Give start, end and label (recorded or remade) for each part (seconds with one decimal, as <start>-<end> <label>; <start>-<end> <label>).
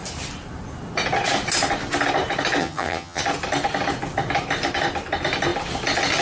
0.0-2.6 recorded; 2.6-3.2 remade; 3.2-6.2 recorded